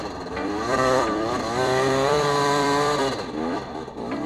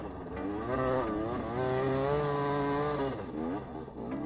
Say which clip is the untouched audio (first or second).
second